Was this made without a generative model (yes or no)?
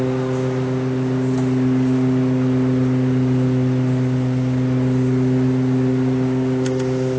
yes